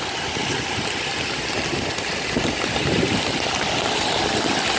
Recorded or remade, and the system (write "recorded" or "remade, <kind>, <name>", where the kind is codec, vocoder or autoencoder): recorded